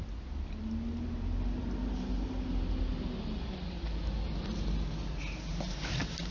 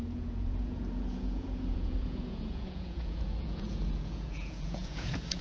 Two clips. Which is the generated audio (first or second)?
second